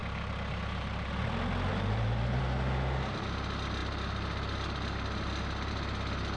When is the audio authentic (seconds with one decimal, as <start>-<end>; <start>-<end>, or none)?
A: 1.1-1.7; 2.4-6.4